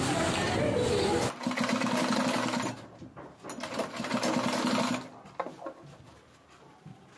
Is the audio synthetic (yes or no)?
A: no